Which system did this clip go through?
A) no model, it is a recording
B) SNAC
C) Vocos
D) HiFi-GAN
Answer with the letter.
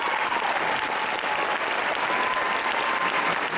A